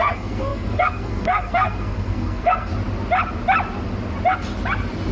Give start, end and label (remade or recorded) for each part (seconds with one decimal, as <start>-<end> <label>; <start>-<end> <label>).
0.0-2.7 remade; 2.7-5.1 recorded